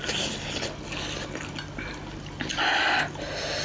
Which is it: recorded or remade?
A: recorded